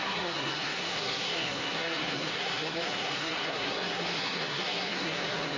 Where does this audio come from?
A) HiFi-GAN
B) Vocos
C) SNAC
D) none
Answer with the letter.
C